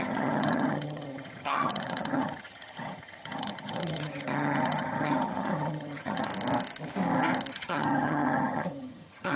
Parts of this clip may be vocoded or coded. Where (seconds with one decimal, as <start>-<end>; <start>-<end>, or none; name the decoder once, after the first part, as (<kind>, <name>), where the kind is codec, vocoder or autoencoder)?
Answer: 0.0-6.3 (vocoder, HiFi-GAN); 7.5-9.4